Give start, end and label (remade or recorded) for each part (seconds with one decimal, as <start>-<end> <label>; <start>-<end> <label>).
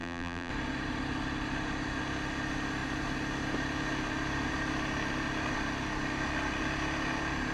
0.0-0.5 remade; 0.5-7.5 recorded